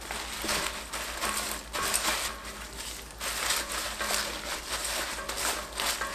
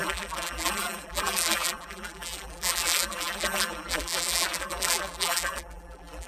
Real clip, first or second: first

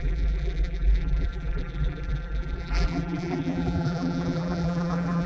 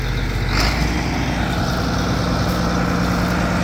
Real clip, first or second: second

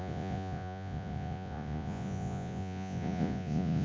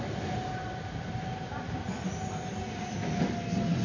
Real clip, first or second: second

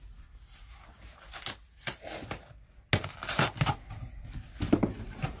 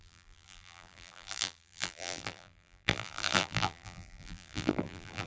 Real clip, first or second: first